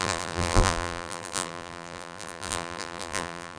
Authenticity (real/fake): fake